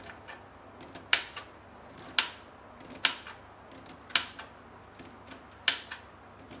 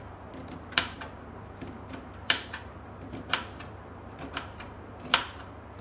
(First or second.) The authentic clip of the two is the first